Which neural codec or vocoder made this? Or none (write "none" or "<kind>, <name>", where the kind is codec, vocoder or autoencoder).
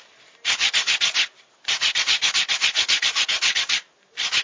none